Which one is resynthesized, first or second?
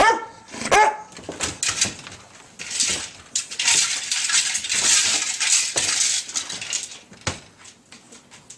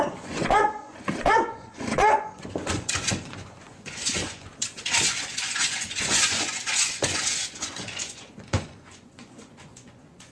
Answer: second